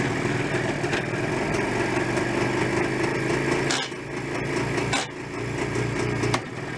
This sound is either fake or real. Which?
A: real